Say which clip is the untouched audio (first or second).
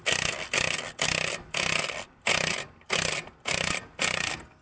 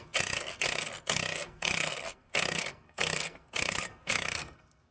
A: first